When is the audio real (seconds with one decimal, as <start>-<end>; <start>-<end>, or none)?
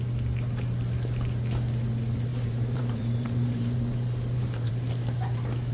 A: 0.0-2.3; 4.7-5.7